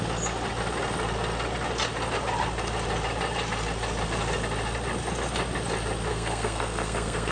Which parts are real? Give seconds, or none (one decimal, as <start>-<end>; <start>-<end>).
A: 0.0-6.1